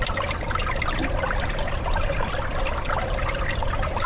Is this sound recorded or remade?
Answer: recorded